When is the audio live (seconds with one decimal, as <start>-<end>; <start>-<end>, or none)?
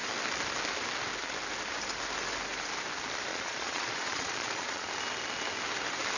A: 0.0-3.3; 4.9-6.2